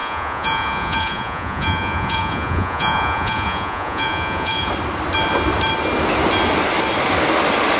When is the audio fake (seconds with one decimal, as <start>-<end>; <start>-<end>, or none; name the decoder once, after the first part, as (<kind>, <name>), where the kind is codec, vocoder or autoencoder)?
0.0-4.7 (vocoder, Vocos)